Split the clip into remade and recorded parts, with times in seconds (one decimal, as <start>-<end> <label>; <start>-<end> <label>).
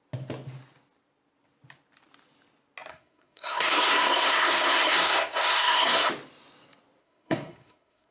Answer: 0.0-2.9 recorded; 2.9-6.1 remade; 6.1-7.0 recorded; 7.0-8.1 remade